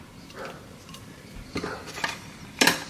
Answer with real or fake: fake